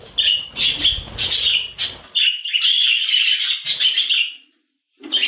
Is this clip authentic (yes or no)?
yes